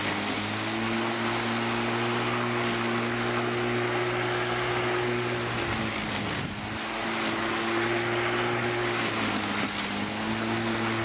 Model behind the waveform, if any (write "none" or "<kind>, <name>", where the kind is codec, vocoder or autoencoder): none